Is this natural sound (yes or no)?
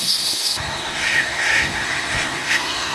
no